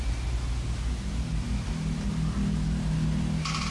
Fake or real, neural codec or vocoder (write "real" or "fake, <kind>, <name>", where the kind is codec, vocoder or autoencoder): real